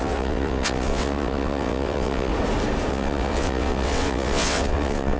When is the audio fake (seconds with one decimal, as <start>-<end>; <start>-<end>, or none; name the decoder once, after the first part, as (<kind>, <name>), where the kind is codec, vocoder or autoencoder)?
0.0-2.3 (vocoder, WaveNeXt); 2.9-5.2